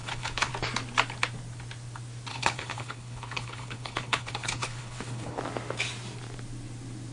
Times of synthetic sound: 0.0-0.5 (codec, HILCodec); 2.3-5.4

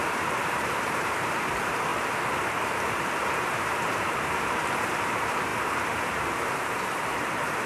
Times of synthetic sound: 0.0-1.9 (vocoder, BigVGAN v2); 2.6-5.5; 6.0-7.7

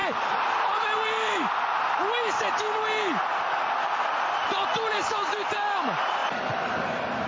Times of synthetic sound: none

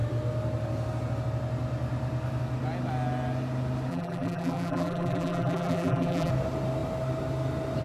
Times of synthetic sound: 3.9-6.3 (vocoder, BigVGAN v2)

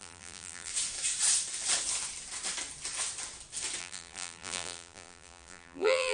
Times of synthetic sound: 0.0-0.7 (vocoder, BigVGAN v2); 3.8-6.1

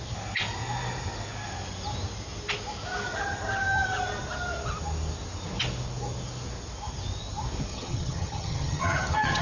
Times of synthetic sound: 7.7-9.4 (vocoder, HiFi-GAN)